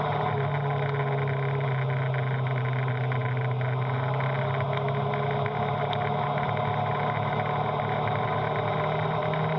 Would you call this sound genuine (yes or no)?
yes